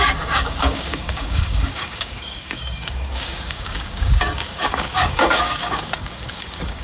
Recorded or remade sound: remade